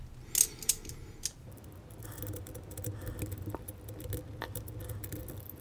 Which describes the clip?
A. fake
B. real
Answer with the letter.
B